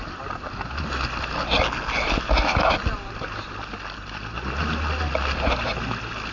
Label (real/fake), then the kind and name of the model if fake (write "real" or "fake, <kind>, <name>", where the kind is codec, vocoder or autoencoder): real